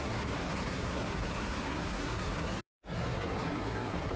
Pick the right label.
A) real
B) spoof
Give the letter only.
B